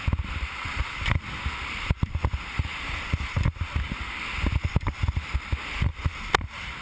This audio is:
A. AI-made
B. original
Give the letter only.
B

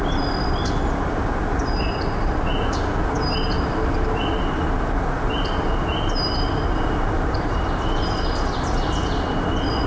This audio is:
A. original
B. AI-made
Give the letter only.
A